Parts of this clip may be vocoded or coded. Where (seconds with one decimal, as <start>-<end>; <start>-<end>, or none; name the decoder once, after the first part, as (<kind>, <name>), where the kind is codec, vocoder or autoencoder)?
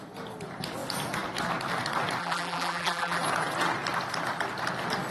2.2-3.2 (vocoder, BigVGAN v2)